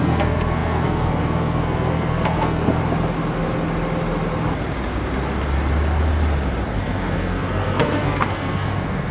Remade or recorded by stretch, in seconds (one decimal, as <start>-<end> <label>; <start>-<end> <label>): 0.0-2.8 remade; 2.8-6.8 recorded; 6.8-9.1 remade